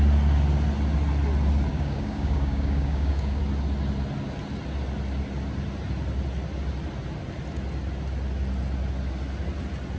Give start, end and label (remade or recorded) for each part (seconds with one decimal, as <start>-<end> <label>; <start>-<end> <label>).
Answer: 0.0-1.7 recorded; 1.7-3.4 remade; 3.4-10.0 recorded